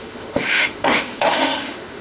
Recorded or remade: remade